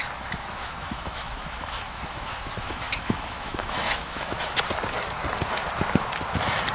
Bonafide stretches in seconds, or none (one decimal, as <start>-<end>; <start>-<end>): 0.0-0.4; 4.4-6.7